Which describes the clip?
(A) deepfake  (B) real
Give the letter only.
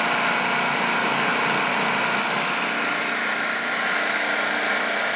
B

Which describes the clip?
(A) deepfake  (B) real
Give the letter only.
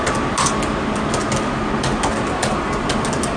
B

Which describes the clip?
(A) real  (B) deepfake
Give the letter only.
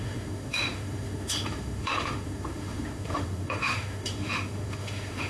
B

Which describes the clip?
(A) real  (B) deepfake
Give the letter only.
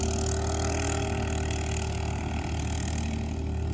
A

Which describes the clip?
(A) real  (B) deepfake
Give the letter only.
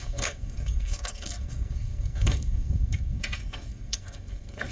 B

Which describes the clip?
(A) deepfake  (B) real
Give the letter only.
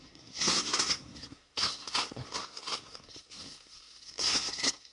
A